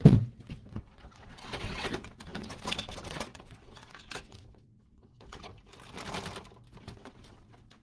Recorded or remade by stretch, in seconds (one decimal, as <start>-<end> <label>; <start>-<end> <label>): 0.0-5.5 remade; 5.5-6.8 recorded; 6.8-7.8 remade